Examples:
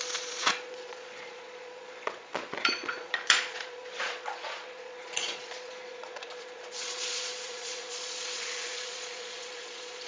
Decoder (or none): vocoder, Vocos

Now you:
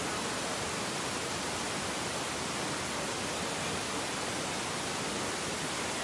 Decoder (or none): none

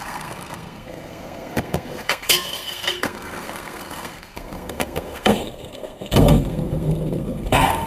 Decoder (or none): codec, SNAC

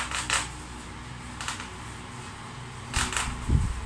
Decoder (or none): none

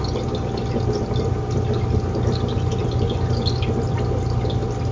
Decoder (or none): none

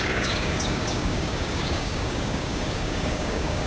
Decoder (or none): codec, DAC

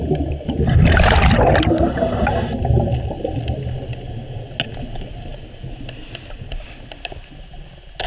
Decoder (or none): none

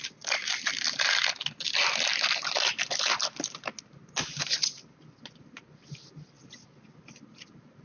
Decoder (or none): none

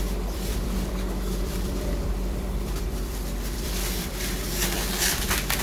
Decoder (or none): vocoder, BigVGAN v2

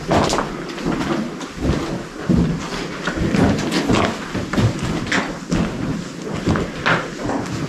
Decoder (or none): none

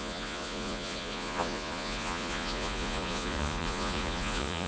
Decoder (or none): vocoder, Vocos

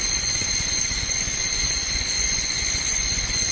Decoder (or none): vocoder, Vocos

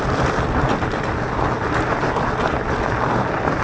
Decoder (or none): none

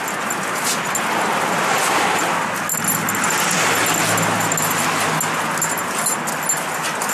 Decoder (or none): none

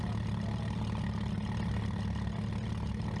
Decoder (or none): none